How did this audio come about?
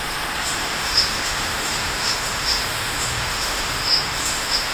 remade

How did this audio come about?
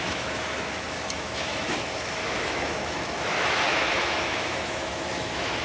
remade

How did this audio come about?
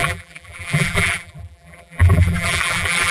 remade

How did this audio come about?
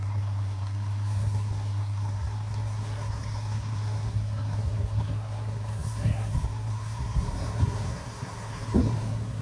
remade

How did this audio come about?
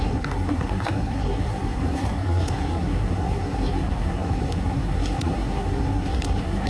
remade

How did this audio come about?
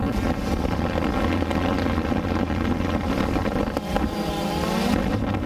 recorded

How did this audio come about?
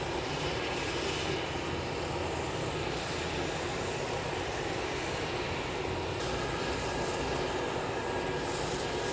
recorded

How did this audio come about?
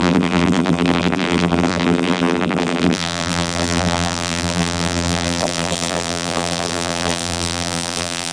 remade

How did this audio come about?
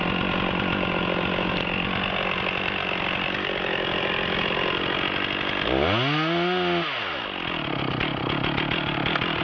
recorded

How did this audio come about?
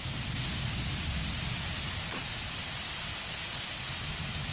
recorded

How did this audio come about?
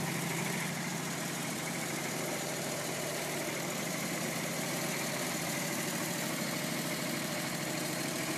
remade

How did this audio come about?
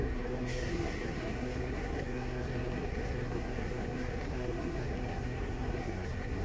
remade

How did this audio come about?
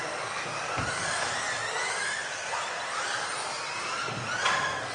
recorded